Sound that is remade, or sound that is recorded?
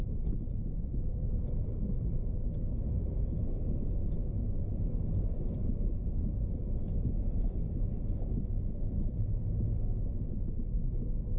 remade